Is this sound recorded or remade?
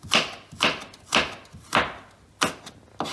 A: recorded